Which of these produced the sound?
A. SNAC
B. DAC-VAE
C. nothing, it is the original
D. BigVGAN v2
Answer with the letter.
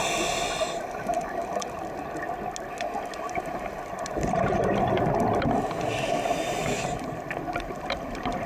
C